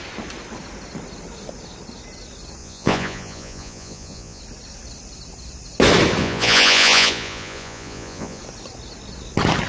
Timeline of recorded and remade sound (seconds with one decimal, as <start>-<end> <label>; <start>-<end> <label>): 0.0-2.6 recorded; 2.6-4.4 remade; 4.4-6.2 recorded; 6.2-8.4 remade; 8.4-9.7 recorded